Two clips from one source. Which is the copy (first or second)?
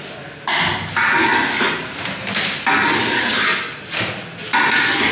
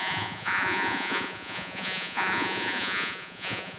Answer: second